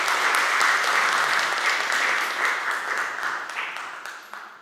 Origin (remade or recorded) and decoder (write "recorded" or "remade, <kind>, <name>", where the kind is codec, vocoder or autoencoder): recorded